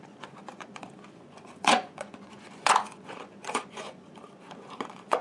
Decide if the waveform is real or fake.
fake